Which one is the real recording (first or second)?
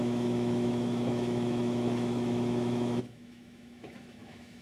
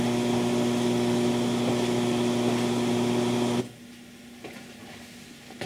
second